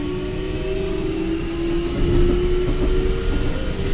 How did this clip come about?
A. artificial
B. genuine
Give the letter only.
B